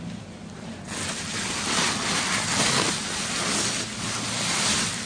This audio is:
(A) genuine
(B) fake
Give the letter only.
A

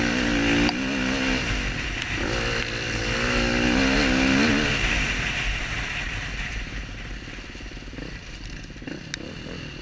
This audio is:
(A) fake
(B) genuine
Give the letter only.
B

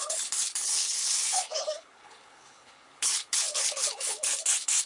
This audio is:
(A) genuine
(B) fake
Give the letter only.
B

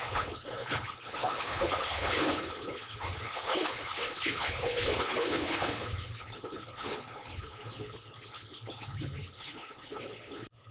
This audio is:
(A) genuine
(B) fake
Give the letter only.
B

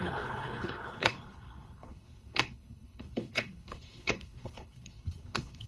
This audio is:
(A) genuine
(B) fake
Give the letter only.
B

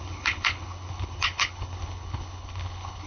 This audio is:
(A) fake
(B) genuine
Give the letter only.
A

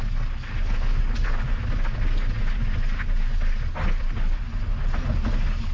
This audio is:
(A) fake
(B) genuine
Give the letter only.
B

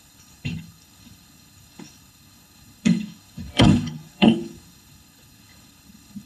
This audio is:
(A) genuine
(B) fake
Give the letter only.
B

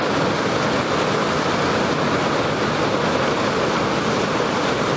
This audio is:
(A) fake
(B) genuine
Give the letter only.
B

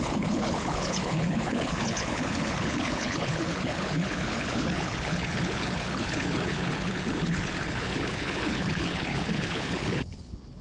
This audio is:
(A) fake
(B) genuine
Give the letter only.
A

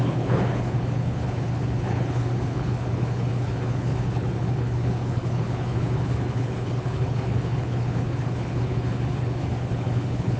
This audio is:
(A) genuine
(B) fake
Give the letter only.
B